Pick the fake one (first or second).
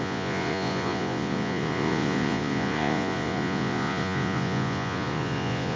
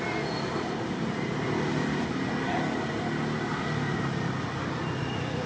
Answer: first